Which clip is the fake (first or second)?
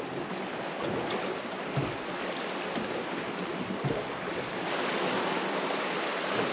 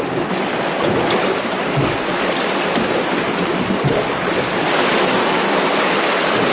second